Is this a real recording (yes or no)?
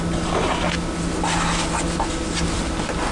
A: yes